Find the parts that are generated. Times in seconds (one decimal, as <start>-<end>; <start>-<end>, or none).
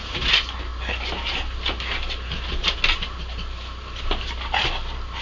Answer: none